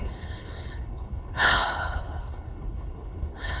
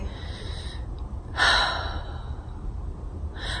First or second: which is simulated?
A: first